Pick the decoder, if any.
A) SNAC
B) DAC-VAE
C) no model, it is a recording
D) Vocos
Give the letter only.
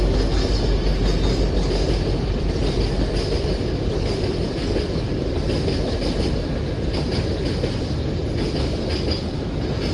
C